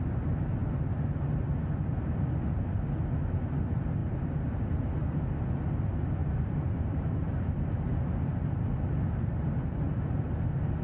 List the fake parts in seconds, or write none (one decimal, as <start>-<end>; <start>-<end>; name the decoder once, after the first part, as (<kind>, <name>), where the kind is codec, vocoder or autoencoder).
6.2-8.6 (vocoder, BigVGAN v2)